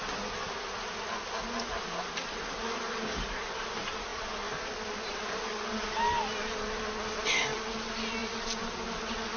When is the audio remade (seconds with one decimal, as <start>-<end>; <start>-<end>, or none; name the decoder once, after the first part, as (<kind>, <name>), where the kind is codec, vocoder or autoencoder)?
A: none